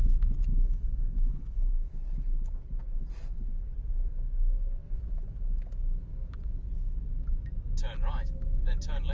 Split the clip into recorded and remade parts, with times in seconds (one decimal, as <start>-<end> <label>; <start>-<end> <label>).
0.0-0.5 recorded; 0.5-1.7 remade; 1.7-9.1 recorded